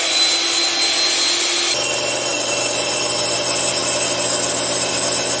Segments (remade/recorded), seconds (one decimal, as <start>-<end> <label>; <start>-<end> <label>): 0.0-2.3 recorded; 2.3-3.0 remade; 3.0-5.4 recorded